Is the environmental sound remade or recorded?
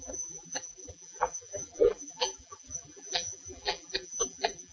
remade